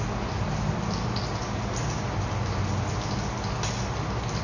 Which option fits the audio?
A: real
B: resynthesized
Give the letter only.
A